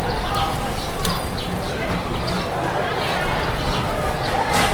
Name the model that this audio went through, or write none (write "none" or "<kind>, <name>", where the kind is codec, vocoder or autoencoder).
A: none